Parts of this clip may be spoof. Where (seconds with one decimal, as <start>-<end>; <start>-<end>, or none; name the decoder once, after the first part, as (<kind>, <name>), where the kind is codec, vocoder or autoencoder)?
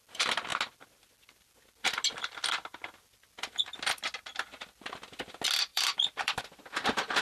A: 5.7-6.4 (vocoder, BigVGAN v2)